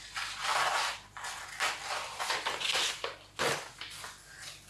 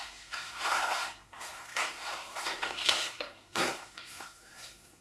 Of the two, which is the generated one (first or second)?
second